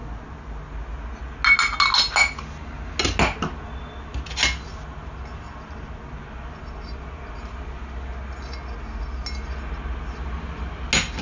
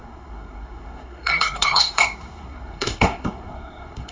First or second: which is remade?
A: second